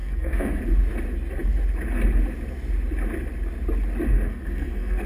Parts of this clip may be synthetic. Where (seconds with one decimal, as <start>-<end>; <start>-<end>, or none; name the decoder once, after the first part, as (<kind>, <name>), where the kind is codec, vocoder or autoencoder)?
0.0-0.6 (codec, SNAC); 4.1-5.1